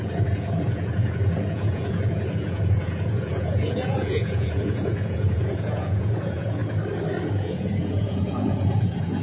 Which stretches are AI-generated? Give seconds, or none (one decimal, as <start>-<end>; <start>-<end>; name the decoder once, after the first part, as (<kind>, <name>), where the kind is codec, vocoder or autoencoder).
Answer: 0.0-6.6 (vocoder, Vocos); 7.3-9.2